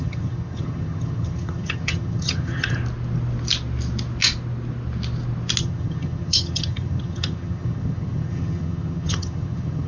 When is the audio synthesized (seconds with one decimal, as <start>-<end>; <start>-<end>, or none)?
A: 0.0-2.8; 5.6-9.9